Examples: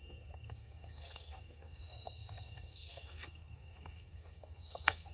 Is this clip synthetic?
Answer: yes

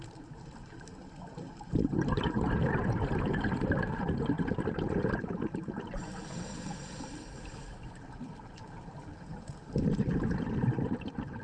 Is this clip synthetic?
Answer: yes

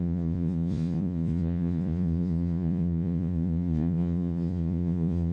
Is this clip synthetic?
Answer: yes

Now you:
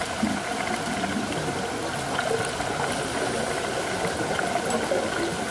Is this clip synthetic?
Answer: no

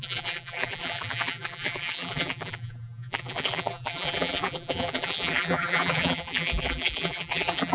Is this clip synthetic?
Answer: yes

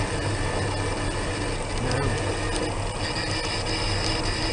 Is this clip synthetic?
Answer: no